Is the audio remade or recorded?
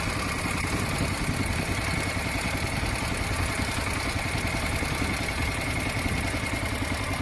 recorded